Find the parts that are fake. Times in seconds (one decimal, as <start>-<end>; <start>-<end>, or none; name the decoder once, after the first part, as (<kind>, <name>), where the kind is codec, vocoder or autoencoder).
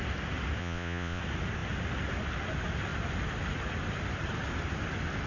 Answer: 0.6-1.2 (vocoder, Vocos)